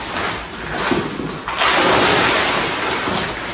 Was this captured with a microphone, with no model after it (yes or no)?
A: yes